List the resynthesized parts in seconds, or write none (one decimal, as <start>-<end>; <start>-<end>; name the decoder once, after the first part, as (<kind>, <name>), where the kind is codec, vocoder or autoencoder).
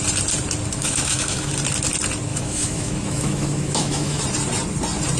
0.8-1.5 (autoencoder, DAC-VAE); 2.3-4.2